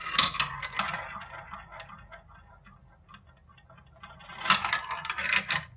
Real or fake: real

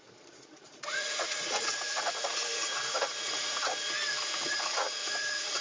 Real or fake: fake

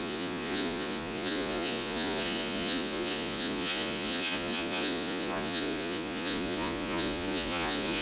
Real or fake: fake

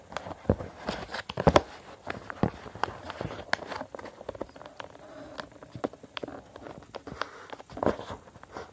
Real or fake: real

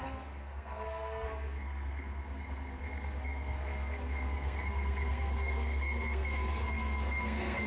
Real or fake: fake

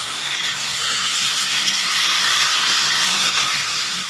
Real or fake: fake